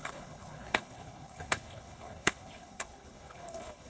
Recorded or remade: remade